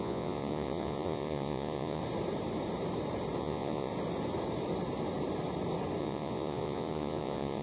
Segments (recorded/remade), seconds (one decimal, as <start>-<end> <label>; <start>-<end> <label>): 0.0-2.0 remade; 2.0-3.4 recorded; 3.4-3.9 remade; 3.9-6.0 recorded; 6.0-7.6 remade

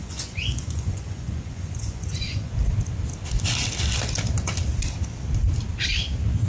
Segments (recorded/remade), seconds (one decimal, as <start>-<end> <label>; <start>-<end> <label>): 0.0-2.5 remade; 2.5-6.5 recorded

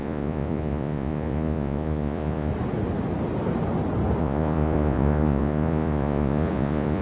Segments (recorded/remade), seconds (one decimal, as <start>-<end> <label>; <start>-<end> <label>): 0.0-2.5 remade; 2.5-4.2 recorded; 4.2-7.0 remade

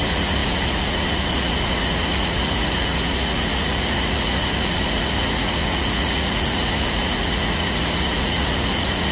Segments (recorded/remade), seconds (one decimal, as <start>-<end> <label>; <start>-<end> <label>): 0.0-9.1 remade

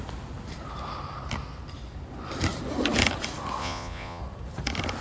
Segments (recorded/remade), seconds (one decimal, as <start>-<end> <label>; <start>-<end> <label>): 0.0-3.6 recorded; 3.6-4.2 remade; 4.2-5.0 recorded

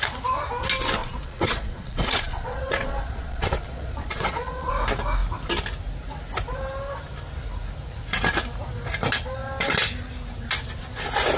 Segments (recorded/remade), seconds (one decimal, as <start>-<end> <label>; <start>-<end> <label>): 0.0-1.0 recorded; 1.0-4.7 remade; 4.7-11.4 recorded

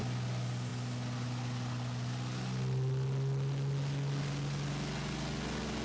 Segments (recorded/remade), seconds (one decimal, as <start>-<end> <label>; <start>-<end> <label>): 0.0-5.8 recorded